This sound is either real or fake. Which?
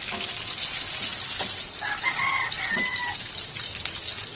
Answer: real